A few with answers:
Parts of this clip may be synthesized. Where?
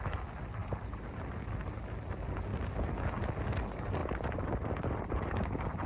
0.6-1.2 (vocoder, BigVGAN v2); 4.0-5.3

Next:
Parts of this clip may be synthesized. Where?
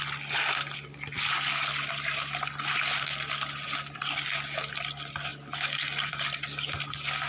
none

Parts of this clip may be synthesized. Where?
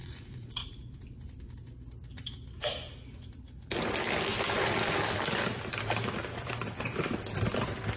0.0-0.8 (vocoder, Vocos)